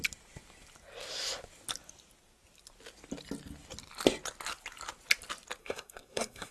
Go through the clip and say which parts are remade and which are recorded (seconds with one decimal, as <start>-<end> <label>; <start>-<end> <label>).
0.0-5.6 recorded; 5.6-6.5 remade